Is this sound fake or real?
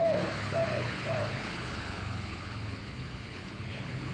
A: fake